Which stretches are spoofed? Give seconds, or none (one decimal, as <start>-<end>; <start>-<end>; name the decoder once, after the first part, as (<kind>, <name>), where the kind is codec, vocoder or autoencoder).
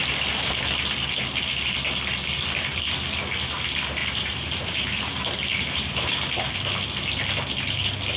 4.0-5.2 (vocoder, BigVGAN v2)